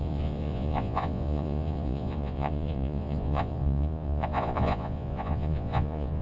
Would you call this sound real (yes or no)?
no